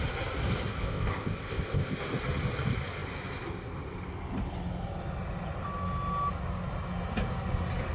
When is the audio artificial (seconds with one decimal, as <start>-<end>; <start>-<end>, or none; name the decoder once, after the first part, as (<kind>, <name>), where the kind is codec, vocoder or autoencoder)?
0.7-2.0 (codec, ZipCodec)